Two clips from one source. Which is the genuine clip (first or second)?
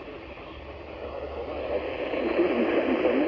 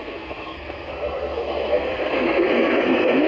first